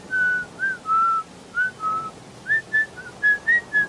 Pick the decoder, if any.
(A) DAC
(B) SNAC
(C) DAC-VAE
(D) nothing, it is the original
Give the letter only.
D